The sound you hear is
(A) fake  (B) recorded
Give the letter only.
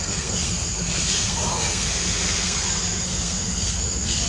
A